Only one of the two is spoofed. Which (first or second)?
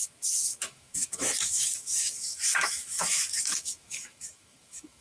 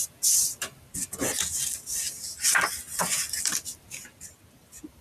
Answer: first